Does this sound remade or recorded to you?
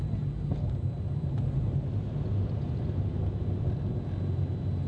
recorded